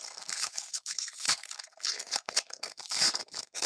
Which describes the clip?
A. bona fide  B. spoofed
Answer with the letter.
B